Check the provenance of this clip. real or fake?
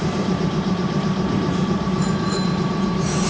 fake